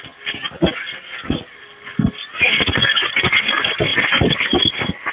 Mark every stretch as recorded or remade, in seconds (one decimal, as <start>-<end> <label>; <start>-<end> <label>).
0.0-5.1 recorded